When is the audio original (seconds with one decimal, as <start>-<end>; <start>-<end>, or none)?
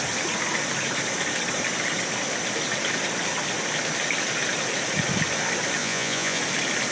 0.0-5.8; 6.4-6.9